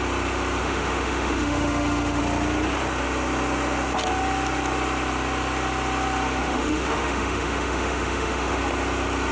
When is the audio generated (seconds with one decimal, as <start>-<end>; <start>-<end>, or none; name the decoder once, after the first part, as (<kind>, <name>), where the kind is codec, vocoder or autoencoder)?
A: 0.6-2.2 (autoencoder, DAC-VAE); 6.4-8.6